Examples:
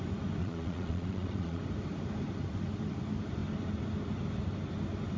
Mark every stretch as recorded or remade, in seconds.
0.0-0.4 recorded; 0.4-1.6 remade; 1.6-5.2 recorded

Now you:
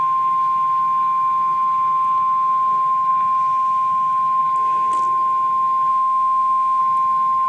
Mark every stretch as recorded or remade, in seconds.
0.0-5.9 recorded; 5.9-6.8 remade; 6.8-7.5 recorded

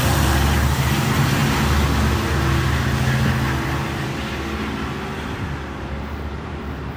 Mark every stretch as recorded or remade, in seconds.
0.0-1.4 remade; 1.4-5.6 recorded; 5.6-7.0 remade

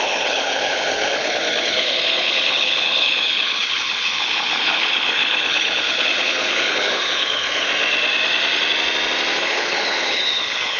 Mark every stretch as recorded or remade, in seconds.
0.0-7.7 remade; 7.7-9.4 recorded; 9.4-10.8 remade

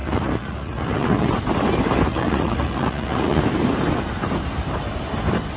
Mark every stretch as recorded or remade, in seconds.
0.0-1.3 remade; 1.3-2.1 recorded; 2.1-3.4 remade; 3.4-5.6 recorded

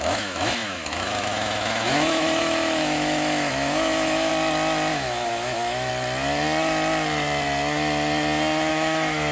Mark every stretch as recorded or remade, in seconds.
0.0-4.3 remade; 4.3-4.9 recorded; 4.9-5.9 remade; 5.9-8.7 recorded; 8.7-9.3 remade